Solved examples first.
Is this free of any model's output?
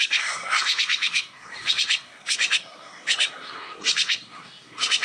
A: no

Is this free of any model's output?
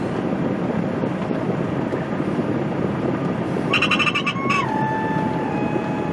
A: yes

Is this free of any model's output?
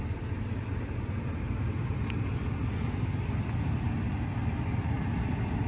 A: yes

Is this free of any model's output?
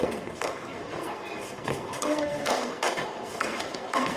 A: no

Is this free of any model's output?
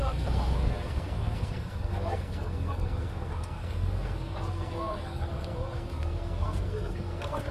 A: no